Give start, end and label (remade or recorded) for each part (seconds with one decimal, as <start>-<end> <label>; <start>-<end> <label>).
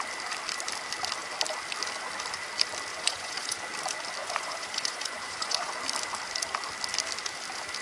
0.0-2.9 recorded; 2.9-3.6 remade; 3.6-4.2 recorded; 4.2-5.7 remade; 5.7-7.8 recorded